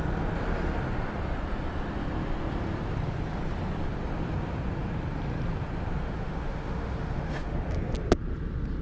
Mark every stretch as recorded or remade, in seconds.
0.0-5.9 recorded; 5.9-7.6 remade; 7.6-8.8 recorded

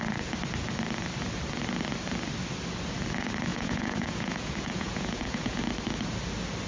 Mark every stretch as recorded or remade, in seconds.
0.0-3.5 recorded; 3.5-5.6 remade; 5.6-6.7 recorded

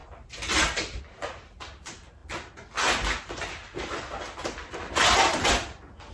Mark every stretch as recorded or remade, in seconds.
0.0-1.0 remade; 1.0-6.1 recorded

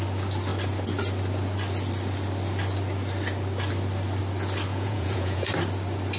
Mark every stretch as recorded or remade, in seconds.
0.0-4.7 recorded; 4.7-5.5 remade; 5.5-6.2 recorded

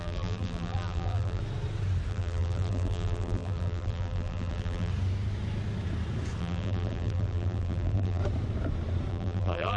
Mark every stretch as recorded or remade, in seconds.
0.0-1.4 remade; 1.4-2.1 recorded; 2.1-4.9 remade; 4.9-6.4 recorded; 6.4-8.2 remade; 8.2-9.1 recorded; 9.1-9.8 remade